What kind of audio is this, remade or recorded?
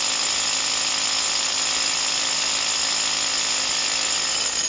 recorded